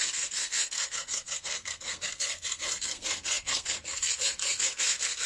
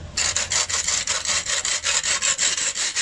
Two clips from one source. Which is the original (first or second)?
second